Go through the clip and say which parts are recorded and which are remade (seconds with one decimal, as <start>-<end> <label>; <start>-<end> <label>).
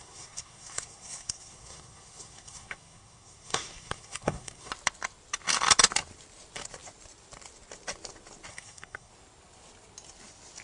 0.0-4.7 remade; 4.7-8.5 recorded; 8.5-9.1 remade; 9.1-10.6 recorded